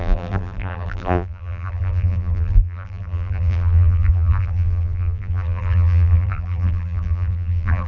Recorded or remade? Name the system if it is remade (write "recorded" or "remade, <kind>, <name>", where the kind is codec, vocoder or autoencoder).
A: remade, vocoder, BigVGAN v2